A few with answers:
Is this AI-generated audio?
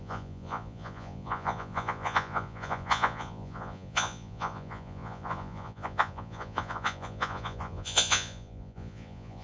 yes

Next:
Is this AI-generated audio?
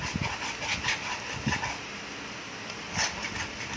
no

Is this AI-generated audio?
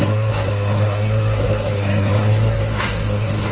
yes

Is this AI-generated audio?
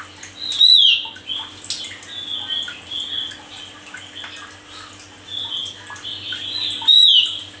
no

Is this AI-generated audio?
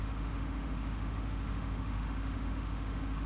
yes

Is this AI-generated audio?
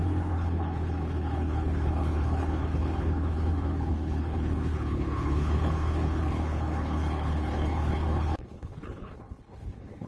yes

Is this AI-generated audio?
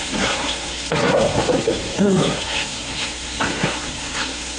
yes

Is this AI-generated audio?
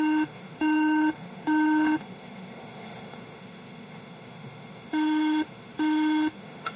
yes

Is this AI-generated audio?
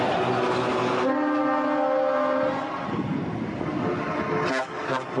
no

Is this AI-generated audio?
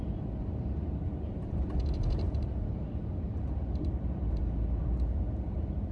yes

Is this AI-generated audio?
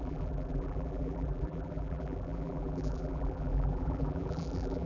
yes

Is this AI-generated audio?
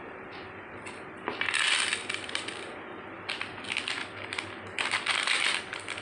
no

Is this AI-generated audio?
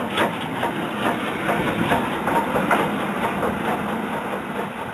no